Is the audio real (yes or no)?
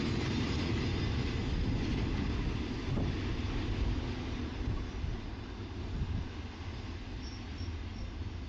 yes